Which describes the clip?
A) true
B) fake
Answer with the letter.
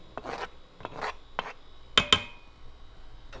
A